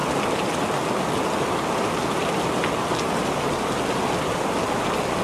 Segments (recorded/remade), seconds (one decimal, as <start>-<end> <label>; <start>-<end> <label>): 0.0-5.2 recorded